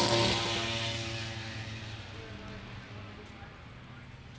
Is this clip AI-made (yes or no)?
no